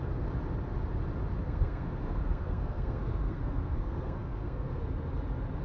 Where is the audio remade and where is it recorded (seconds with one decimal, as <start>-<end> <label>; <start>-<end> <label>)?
0.0-1.4 recorded; 1.4-4.8 remade; 4.8-5.6 recorded